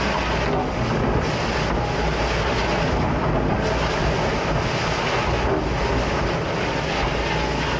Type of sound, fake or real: real